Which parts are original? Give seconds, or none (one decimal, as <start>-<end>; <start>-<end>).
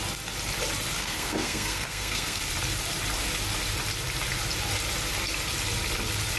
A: 0.0-0.9; 2.4-6.4